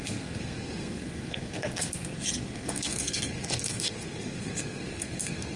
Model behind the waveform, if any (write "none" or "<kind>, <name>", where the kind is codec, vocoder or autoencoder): codec, SNAC